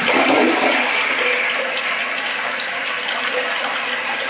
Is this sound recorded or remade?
recorded